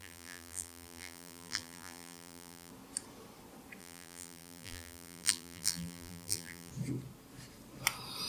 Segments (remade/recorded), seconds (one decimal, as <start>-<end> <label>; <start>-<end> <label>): 0.0-2.7 remade; 2.7-3.8 recorded; 3.8-6.7 remade; 6.7-8.3 recorded